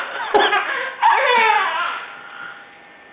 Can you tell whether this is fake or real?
real